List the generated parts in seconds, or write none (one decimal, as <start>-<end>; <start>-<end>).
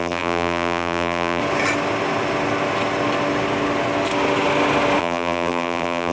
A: 0.0-1.4; 5.0-6.1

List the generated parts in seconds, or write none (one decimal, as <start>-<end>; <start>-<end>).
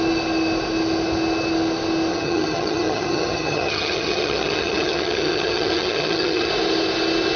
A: 2.1-6.5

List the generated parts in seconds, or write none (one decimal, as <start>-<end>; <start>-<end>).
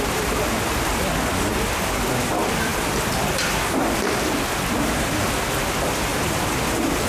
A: 6.1-7.1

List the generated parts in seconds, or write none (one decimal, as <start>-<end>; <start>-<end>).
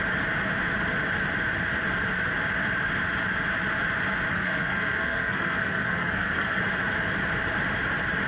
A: 4.3-6.6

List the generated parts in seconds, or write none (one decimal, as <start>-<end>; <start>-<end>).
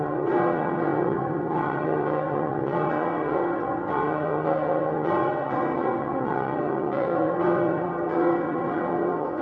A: 0.0-9.4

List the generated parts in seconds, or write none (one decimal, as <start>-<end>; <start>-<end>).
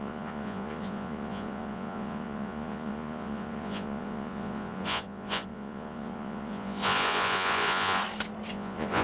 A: 0.0-8.0; 8.5-9.0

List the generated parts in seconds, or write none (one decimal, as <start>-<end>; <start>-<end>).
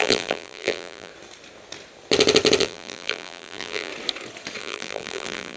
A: 0.0-1.1; 2.6-3.9; 4.6-5.6